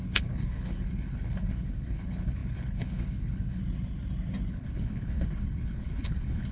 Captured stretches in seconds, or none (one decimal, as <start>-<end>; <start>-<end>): 3.6-4.5